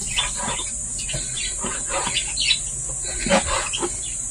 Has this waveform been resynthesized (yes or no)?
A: no